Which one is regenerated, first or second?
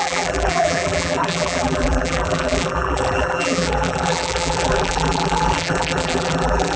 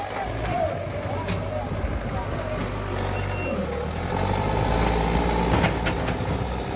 first